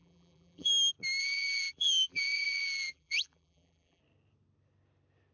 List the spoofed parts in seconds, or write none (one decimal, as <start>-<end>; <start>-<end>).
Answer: 0.0-0.7; 1.2-4.0